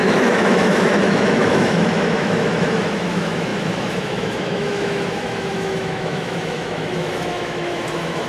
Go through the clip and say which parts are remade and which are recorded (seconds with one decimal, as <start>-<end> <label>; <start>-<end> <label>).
0.0-8.3 remade

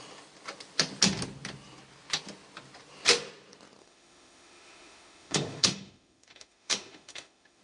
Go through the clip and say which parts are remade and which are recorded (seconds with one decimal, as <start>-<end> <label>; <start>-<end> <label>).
0.0-3.8 recorded; 3.8-7.6 remade

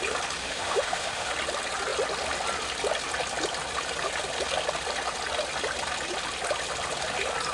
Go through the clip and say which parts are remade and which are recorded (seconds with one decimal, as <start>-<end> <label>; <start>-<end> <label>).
0.0-0.4 recorded; 0.4-1.3 remade; 1.3-7.5 recorded

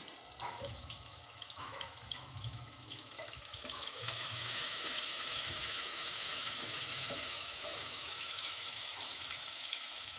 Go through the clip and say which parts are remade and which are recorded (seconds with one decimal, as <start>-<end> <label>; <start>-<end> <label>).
0.0-0.5 recorded; 0.5-10.2 remade

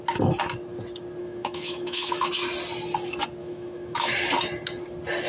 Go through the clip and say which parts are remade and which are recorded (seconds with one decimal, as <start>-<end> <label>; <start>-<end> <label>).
0.0-1.2 recorded; 1.2-2.3 remade; 2.3-3.4 recorded; 3.4-4.1 remade; 4.1-5.3 recorded